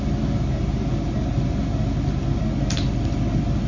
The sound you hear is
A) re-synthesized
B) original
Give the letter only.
B